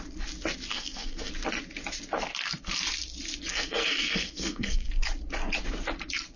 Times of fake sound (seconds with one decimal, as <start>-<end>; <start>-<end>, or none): 0.7-1.3; 3.5-4.9